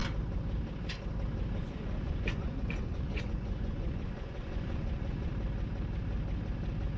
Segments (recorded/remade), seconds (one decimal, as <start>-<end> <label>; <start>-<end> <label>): 0.0-1.6 recorded; 1.6-5.3 remade; 5.3-7.0 recorded